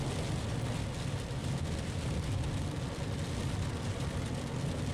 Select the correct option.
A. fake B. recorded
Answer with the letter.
B